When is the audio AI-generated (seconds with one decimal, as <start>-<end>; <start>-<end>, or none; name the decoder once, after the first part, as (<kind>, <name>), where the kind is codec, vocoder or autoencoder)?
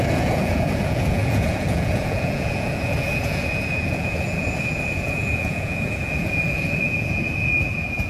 0.0-8.1 (vocoder, Vocos)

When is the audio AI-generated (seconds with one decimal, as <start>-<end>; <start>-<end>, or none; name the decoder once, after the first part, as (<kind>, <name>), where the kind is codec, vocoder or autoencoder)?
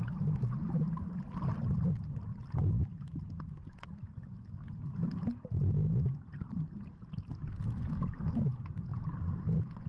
none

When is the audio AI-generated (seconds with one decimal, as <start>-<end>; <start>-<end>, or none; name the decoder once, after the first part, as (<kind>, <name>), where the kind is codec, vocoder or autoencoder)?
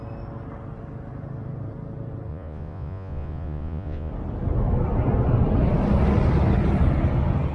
2.3-4.1 (vocoder, Vocos)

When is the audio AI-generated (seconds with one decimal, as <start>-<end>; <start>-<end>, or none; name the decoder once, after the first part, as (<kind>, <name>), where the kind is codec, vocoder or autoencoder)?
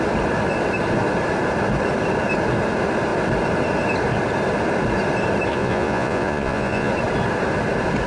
5.5-6.9 (vocoder, Vocos)